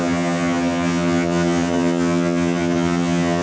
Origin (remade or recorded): remade